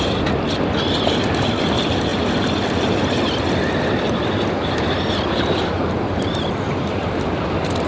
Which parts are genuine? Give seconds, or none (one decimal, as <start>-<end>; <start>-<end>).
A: 0.0-7.9